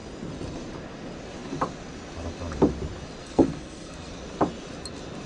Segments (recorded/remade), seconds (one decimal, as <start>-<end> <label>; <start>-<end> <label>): 0.0-3.2 recorded; 3.2-4.1 remade; 4.1-5.3 recorded